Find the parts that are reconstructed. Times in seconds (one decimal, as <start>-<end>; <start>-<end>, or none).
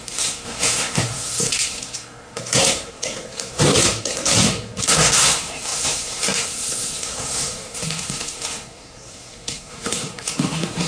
0.0-10.9